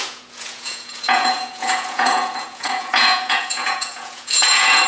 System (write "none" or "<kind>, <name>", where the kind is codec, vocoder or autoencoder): vocoder, Vocos